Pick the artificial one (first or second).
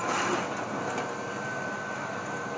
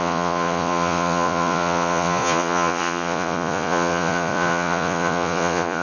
second